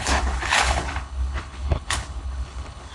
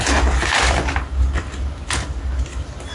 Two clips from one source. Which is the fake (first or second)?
first